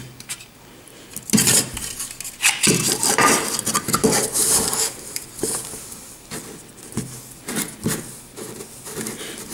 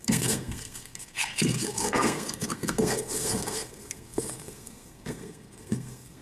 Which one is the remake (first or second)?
second